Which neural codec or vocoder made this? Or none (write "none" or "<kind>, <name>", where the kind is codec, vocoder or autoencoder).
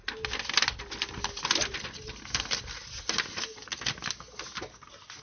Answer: none